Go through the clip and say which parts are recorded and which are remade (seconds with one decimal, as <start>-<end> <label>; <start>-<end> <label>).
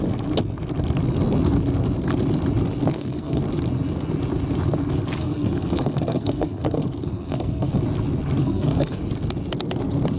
0.0-2.9 recorded; 2.9-3.4 remade; 3.4-5.2 recorded; 5.2-7.8 remade; 7.8-8.4 recorded; 8.4-9.0 remade; 9.0-10.2 recorded